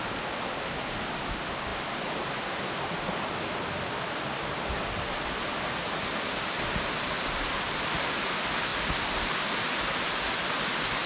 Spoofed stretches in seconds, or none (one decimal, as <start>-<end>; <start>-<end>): none